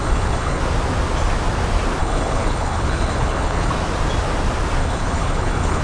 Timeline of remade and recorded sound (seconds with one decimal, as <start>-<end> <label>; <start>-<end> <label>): 0.0-0.6 remade; 0.6-2.0 recorded; 2.0-3.7 remade; 3.7-4.8 recorded; 4.8-5.8 remade